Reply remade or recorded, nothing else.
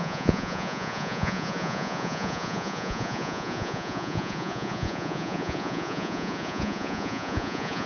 remade